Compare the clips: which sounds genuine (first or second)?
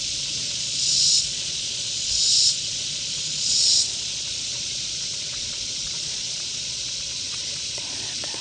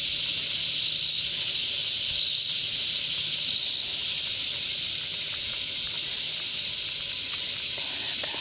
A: second